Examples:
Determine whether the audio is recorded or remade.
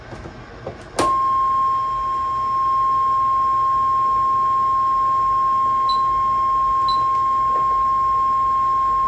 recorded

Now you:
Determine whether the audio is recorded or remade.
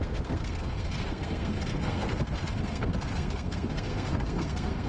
remade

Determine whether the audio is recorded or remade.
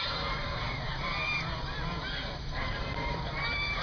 remade